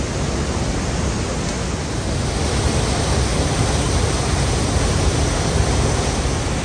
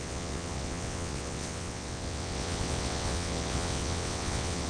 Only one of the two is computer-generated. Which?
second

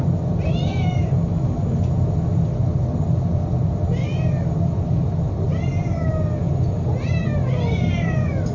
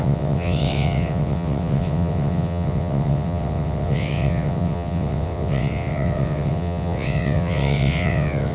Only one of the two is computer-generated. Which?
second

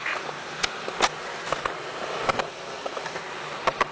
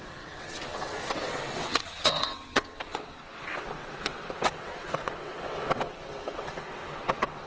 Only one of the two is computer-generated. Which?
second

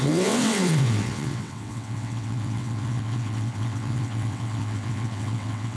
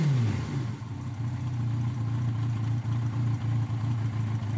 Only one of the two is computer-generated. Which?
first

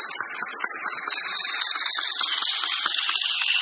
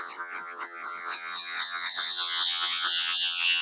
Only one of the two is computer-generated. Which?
second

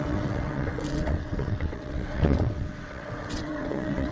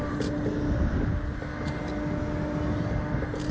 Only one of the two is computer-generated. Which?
first